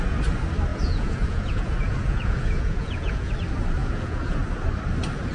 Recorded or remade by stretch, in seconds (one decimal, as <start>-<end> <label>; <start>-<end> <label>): 0.0-0.7 recorded; 0.7-3.3 remade; 3.3-3.8 recorded; 3.8-4.4 remade; 4.4-5.3 recorded